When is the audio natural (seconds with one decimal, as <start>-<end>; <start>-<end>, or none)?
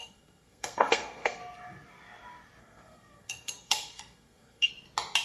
1.4-2.6; 4.7-5.2